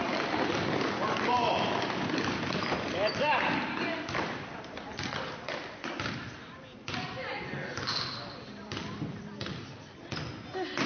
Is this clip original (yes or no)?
no